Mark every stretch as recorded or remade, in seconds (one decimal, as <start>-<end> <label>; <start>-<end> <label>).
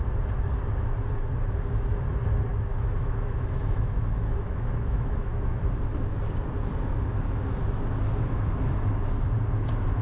0.0-2.5 recorded; 2.5-5.6 remade; 5.6-10.0 recorded